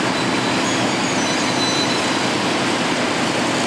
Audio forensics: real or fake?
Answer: real